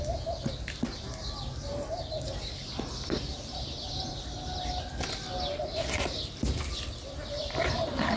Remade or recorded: recorded